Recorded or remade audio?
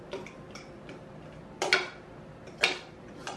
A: recorded